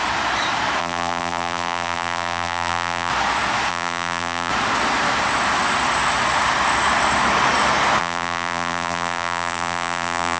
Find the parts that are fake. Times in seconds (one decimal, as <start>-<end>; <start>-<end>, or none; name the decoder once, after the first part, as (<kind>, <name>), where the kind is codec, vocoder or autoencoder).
0.8-3.1 (vocoder, BigVGAN v2); 3.7-4.5; 8.0-10.4